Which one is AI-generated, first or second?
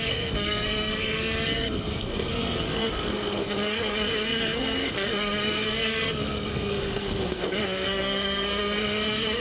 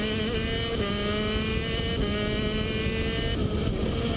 first